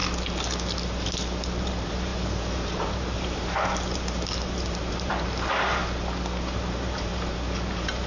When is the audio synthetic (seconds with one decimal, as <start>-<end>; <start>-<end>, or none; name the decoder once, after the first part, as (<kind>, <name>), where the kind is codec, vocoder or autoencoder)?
1.6-5.8 (vocoder, BigVGAN v2); 6.4-8.1

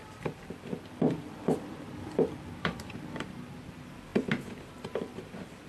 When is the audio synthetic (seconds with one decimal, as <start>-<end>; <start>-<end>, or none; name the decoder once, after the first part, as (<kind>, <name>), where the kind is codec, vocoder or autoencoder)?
0.0-4.1 (vocoder, BigVGAN v2); 5.0-5.7